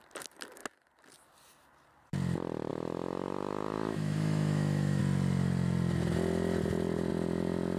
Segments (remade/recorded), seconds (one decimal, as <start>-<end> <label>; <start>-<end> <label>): 0.0-2.7 recorded; 2.7-5.0 remade; 5.0-7.8 recorded